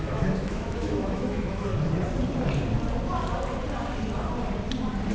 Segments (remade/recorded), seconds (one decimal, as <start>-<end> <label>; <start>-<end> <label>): 0.0-1.7 remade; 1.7-5.1 recorded